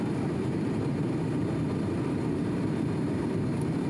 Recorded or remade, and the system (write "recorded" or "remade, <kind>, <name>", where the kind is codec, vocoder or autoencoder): remade, vocoder, BigVGAN v2